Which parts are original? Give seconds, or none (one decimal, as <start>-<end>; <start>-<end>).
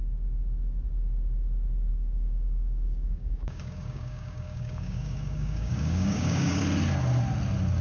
0.0-1.9; 6.6-7.8